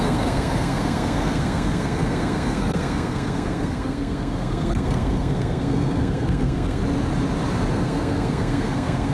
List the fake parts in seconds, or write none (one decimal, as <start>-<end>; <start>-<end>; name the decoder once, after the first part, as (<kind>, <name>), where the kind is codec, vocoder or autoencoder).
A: 0.0-6.8 (codec, SNAC); 7.7-9.1